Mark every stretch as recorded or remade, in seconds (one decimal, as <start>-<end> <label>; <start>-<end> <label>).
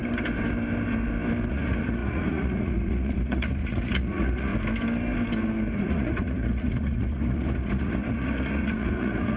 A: 0.0-1.5 recorded; 1.5-4.5 remade; 4.5-5.8 recorded; 5.8-9.4 remade